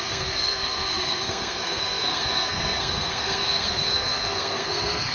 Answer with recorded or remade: remade